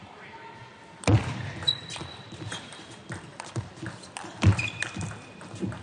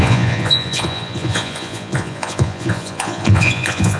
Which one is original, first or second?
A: first